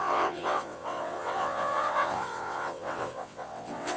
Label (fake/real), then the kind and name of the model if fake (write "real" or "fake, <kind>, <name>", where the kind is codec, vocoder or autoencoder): fake, vocoder, WaveNeXt